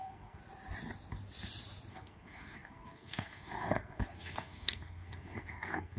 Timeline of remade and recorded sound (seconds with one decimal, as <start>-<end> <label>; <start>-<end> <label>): 0.0-0.4 remade; 0.4-1.9 recorded; 1.9-6.0 remade